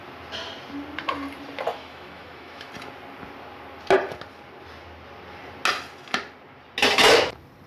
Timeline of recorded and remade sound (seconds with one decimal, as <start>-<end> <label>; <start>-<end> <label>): 0.0-1.7 recorded; 1.7-2.7 remade; 2.7-7.7 recorded